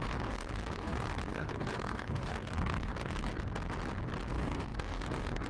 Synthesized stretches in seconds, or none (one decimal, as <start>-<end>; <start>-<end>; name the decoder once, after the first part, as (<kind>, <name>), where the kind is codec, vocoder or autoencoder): 0.0-3.3 (codec, DAC); 4.3-5.5